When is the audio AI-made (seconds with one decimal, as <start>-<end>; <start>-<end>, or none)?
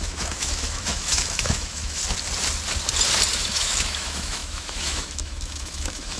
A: 0.0-2.0; 3.3-6.2